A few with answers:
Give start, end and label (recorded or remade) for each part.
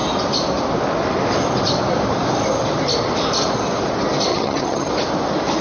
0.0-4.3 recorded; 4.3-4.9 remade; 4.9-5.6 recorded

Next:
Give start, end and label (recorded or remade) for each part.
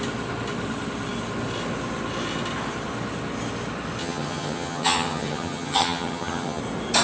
0.0-4.0 recorded; 4.0-6.6 remade; 6.6-7.0 recorded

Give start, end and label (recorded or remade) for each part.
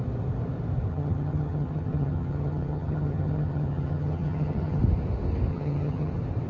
0.0-0.9 recorded; 0.9-4.8 remade; 4.8-5.5 recorded; 5.5-6.1 remade; 6.1-6.5 recorded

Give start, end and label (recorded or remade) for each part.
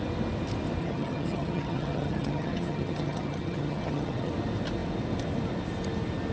0.0-0.8 recorded; 0.8-4.3 remade; 4.3-6.3 recorded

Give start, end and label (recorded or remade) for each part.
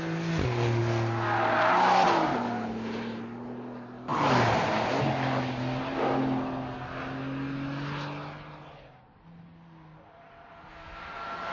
0.0-11.5 recorded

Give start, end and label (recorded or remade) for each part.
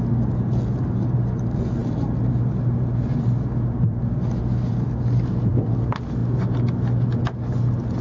0.0-8.0 recorded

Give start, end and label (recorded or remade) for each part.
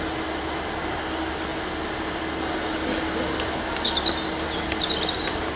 0.0-5.6 recorded